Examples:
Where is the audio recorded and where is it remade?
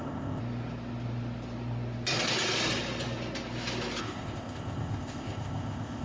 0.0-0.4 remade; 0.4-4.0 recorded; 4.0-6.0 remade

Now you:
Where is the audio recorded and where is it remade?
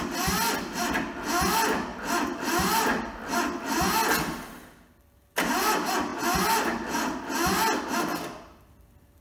0.0-9.2 recorded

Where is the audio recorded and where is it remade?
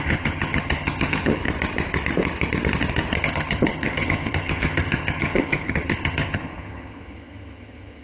0.0-1.4 remade; 1.4-3.2 recorded; 3.2-8.0 remade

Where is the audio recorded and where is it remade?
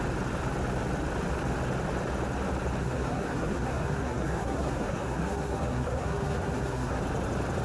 0.0-2.8 recorded; 2.8-7.0 remade; 7.0-7.6 recorded